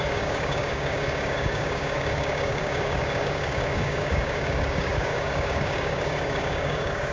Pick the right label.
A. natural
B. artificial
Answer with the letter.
B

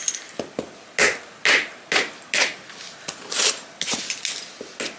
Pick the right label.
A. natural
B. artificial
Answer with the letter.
A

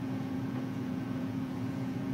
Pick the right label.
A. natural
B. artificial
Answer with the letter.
B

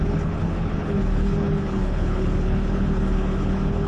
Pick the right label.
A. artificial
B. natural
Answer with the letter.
A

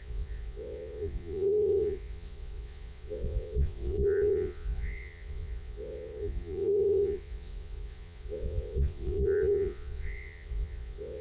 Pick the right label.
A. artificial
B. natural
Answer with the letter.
A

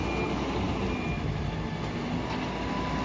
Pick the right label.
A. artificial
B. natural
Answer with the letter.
B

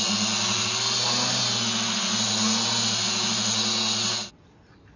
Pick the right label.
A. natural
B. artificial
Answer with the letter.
A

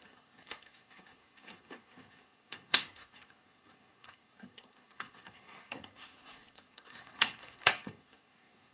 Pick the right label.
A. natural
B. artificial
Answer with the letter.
B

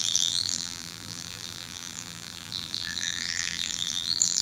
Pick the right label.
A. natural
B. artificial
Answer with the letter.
B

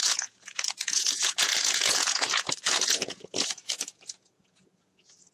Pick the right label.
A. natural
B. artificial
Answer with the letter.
B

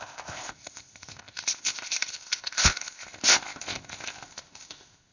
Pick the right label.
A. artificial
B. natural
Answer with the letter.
A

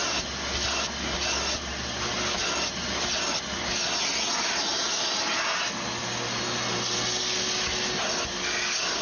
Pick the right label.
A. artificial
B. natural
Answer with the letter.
B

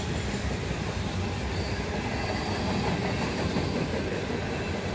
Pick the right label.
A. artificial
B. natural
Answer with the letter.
B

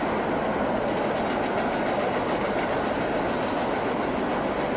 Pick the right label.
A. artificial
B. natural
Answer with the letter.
B